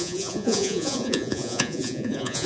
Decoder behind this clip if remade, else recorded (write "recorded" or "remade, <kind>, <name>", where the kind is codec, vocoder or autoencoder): remade, vocoder, Vocos